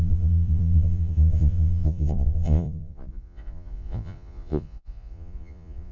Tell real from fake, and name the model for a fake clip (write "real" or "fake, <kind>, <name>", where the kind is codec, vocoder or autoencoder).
fake, vocoder, Vocos